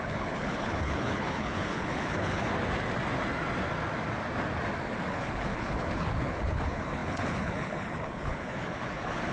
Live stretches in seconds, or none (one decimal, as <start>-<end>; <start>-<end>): 2.5-5.1